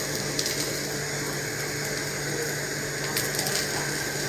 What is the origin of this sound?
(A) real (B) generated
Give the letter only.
A